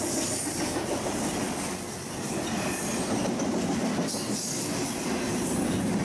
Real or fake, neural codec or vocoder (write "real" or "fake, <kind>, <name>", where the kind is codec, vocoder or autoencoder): real